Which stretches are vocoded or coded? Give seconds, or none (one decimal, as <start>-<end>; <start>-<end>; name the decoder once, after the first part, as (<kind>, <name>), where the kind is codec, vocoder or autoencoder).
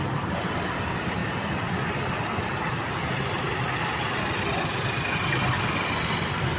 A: none